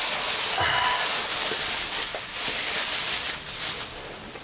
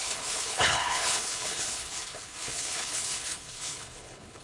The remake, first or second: second